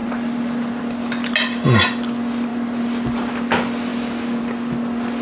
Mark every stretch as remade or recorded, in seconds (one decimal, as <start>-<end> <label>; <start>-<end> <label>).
0.0-0.8 remade; 0.8-2.5 recorded; 2.5-3.3 remade; 3.3-5.2 recorded